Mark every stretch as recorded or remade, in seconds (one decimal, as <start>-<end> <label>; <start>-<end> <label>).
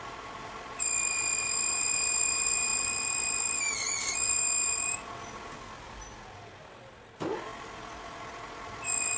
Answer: 0.0-9.2 recorded